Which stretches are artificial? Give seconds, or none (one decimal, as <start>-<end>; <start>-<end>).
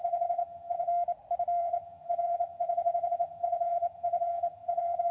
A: 0.0-0.9; 1.6-5.1